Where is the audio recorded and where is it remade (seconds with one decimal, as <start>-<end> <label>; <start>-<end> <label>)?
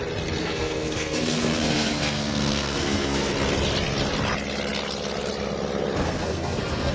0.0-0.4 recorded; 0.4-3.3 remade; 3.3-6.0 recorded; 6.0-6.9 remade